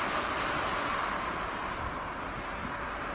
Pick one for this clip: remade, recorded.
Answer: recorded